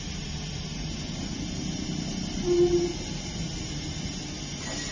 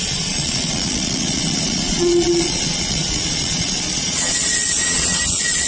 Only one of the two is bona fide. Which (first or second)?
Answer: first